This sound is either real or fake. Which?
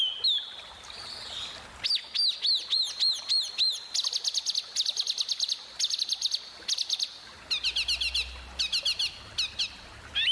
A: real